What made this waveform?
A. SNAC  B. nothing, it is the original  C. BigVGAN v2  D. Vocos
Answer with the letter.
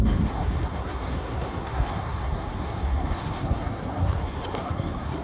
A